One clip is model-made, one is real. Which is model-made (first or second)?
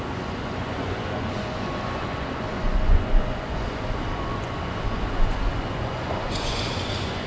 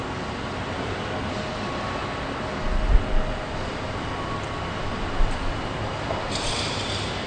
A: first